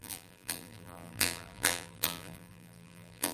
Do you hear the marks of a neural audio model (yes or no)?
yes